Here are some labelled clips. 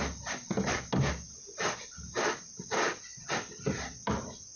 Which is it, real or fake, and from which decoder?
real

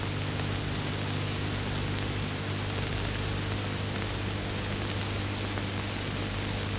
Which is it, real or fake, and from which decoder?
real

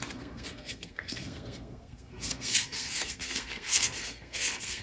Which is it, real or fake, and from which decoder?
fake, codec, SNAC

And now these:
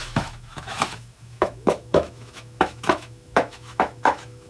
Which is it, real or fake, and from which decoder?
fake, autoencoder, DAC-VAE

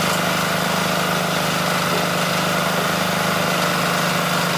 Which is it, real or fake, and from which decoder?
real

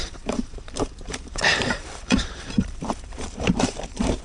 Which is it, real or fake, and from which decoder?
fake, vocoder, BigVGAN v2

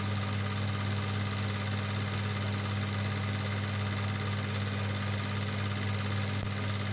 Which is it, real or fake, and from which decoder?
real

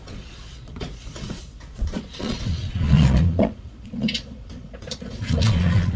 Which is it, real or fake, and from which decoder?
fake, vocoder, Vocos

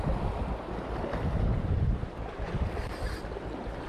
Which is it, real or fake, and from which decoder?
real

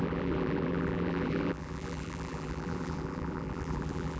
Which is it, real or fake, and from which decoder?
fake, vocoder, BigVGAN v2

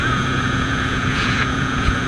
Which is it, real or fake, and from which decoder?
fake, vocoder, Vocos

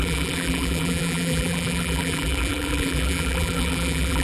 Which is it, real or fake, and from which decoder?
fake, vocoder, BigVGAN v2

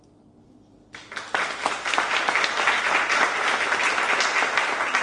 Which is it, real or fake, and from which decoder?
real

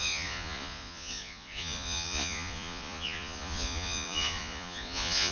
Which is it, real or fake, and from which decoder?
fake, vocoder, Vocos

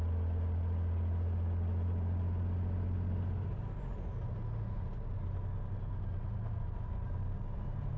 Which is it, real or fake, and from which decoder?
real